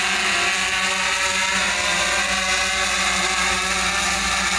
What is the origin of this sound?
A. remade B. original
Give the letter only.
B